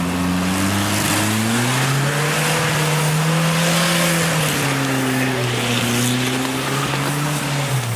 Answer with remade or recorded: recorded